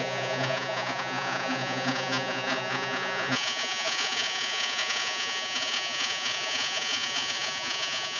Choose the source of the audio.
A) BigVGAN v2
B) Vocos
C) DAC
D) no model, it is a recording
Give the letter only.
B